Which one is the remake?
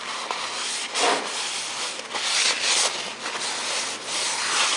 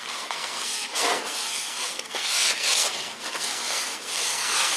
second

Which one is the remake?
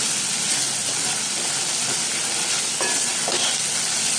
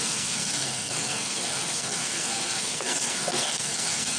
second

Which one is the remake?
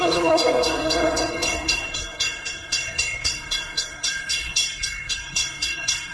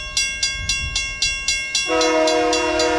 first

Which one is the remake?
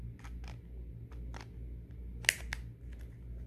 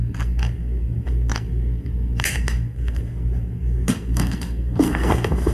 second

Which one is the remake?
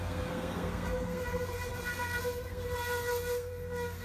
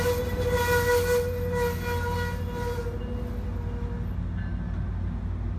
first